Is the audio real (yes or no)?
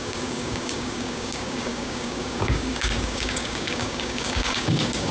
no